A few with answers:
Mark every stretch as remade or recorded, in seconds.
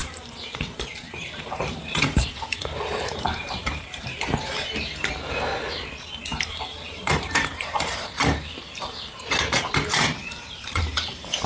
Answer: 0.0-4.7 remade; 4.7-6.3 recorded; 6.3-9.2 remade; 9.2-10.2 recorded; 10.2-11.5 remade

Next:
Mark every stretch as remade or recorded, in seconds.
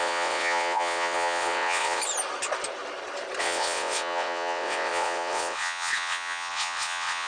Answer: 0.0-2.0 remade; 2.0-3.4 recorded; 3.4-7.3 remade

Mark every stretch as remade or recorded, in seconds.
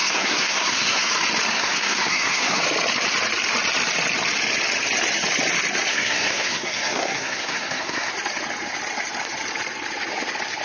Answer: 0.0-1.1 remade; 1.1-1.5 recorded; 1.5-2.6 remade; 2.6-5.9 recorded; 5.9-8.1 remade; 8.1-10.6 recorded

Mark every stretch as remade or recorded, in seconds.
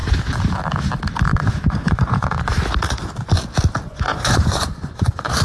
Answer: 0.0-1.2 recorded; 1.2-2.5 remade; 2.5-3.9 recorded; 3.9-5.4 remade